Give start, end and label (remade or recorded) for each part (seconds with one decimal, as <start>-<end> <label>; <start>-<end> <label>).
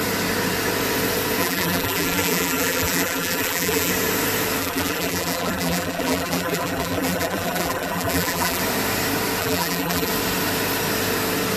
0.0-1.4 recorded; 1.4-3.9 remade; 3.9-4.6 recorded; 4.6-8.6 remade; 8.6-9.4 recorded; 9.4-10.1 remade; 10.1-11.6 recorded